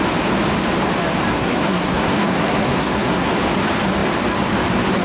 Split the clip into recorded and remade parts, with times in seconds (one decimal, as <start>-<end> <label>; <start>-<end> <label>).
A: 0.0-1.3 recorded; 1.3-3.3 remade; 3.3-5.0 recorded